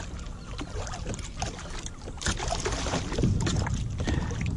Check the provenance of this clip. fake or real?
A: real